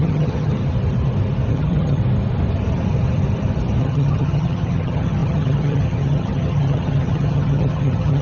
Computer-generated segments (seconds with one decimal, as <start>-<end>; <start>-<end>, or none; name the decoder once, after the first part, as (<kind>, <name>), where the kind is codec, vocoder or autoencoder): 0.0-0.6 (vocoder, HiFi-GAN); 1.5-2.0; 3.8-8.2